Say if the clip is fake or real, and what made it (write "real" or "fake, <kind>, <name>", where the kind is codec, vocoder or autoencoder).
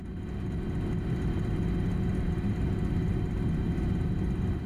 fake, vocoder, BigVGAN v2